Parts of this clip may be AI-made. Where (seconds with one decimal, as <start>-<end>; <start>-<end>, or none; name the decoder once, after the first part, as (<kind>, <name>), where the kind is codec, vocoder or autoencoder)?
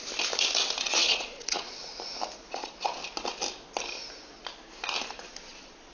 0.8-1.8 (vocoder, Vocos); 2.5-3.0; 5.3-5.9